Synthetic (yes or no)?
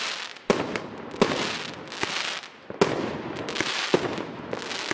no